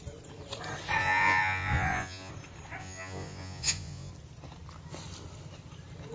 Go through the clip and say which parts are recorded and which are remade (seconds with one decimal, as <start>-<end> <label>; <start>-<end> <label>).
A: 0.0-1.0 recorded; 1.0-2.3 remade; 2.3-2.8 recorded; 2.8-4.1 remade; 4.1-6.1 recorded